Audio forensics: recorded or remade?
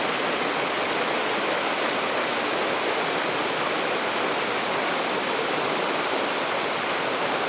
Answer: recorded